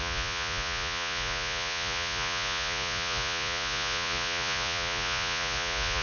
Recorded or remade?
remade